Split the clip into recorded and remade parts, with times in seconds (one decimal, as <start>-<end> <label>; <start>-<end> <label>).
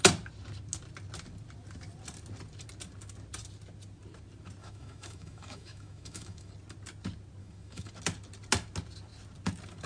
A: 0.0-4.6 recorded; 4.6-6.5 remade; 6.5-7.4 recorded; 7.4-7.9 remade; 7.9-9.9 recorded